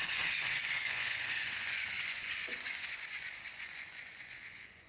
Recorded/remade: remade